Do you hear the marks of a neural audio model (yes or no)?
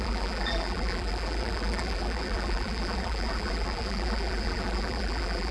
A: yes